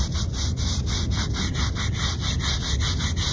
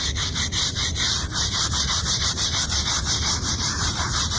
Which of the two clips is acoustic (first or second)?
first